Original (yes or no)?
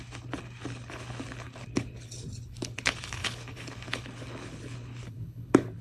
no